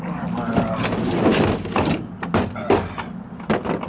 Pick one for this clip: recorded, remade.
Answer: recorded